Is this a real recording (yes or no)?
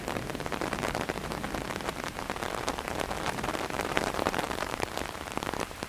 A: no